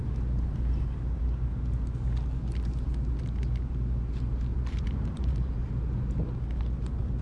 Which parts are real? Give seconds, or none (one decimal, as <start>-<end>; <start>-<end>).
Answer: 0.0-4.5; 5.8-7.2